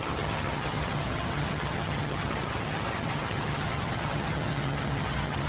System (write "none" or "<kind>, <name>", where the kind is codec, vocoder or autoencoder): vocoder, HiFi-GAN